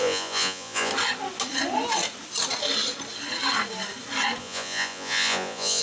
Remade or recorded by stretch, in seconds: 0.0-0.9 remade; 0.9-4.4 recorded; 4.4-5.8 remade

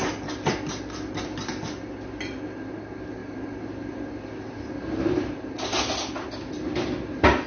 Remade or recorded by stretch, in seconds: 0.0-7.5 recorded

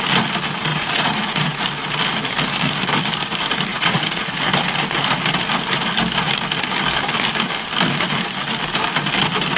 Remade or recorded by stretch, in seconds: 0.0-0.7 recorded; 0.7-1.6 remade; 1.6-3.7 recorded; 3.7-4.4 remade; 4.4-9.6 recorded

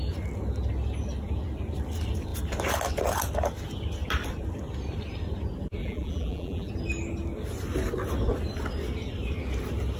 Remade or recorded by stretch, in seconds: 0.0-5.8 recorded; 5.8-6.7 remade; 6.7-10.0 recorded

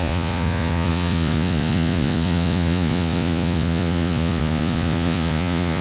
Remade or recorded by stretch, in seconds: 0.0-5.8 remade

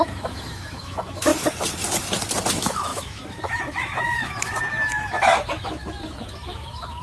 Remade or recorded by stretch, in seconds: 0.0-1.3 remade; 1.3-2.5 recorded; 2.5-7.0 remade

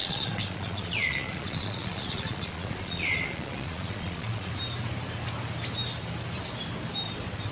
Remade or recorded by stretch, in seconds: 0.0-4.5 remade; 4.5-7.5 recorded

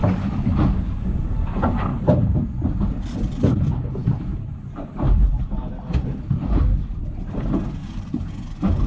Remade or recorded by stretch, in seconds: 0.0-1.9 recorded; 1.9-2.4 remade; 2.4-4.3 recorded; 4.3-5.4 remade; 5.4-7.8 recorded; 7.8-8.3 remade; 8.3-8.9 recorded